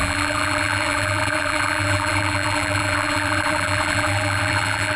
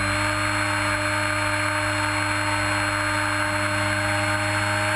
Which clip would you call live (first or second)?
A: second